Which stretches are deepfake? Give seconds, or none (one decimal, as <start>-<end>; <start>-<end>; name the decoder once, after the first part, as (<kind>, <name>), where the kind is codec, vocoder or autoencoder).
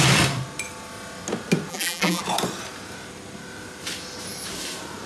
1.7-2.2 (vocoder, BigVGAN v2)